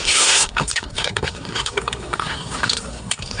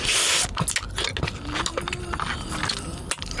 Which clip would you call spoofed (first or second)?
first